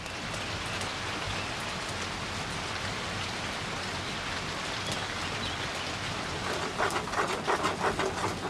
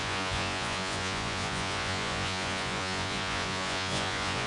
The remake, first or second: second